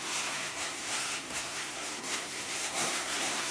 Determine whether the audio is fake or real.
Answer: fake